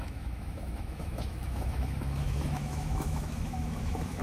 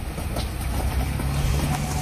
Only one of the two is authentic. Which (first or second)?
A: second